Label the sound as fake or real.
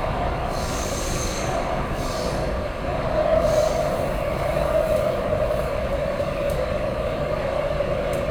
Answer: fake